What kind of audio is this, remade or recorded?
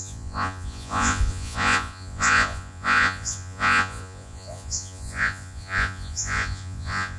remade